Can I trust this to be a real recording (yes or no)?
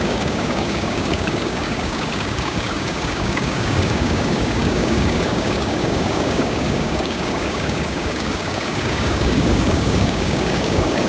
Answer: no